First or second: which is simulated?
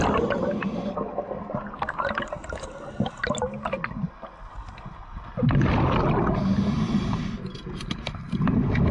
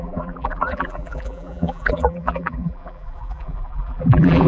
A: second